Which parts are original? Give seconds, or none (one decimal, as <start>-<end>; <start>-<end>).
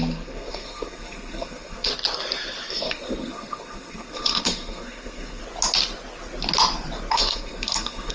1.9-2.7; 5.4-7.1